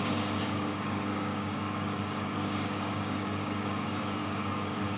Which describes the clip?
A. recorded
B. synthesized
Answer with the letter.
B